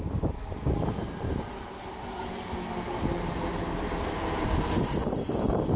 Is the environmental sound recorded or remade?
recorded